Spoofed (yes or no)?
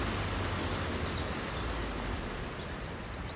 no